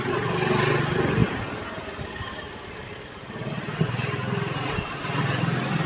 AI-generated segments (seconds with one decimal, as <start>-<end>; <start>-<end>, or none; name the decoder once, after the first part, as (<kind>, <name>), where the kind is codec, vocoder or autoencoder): none